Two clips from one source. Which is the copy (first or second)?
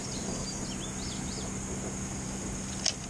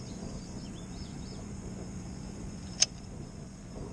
second